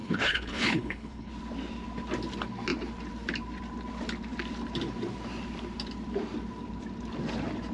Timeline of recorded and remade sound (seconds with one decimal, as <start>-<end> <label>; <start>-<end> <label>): 0.0-1.3 remade; 1.3-7.7 recorded